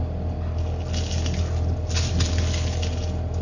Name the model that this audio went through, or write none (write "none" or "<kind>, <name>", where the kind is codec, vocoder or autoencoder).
none